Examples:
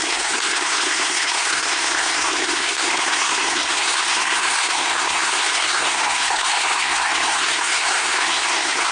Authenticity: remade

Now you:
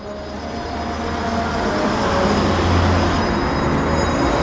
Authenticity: recorded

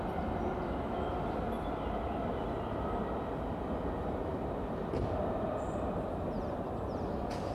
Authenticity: recorded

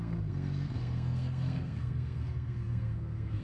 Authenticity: remade